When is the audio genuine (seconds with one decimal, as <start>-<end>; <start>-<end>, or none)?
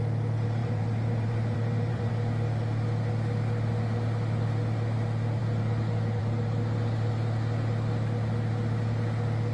0.0-0.6; 2.1-9.5